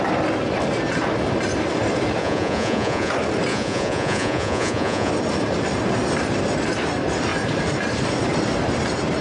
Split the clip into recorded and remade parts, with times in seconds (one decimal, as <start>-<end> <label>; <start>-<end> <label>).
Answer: 0.0-2.2 recorded; 2.2-3.1 remade; 3.1-3.5 recorded; 3.5-5.1 remade; 5.1-9.2 recorded